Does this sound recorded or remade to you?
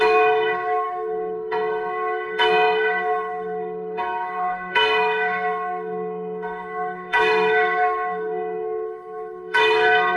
remade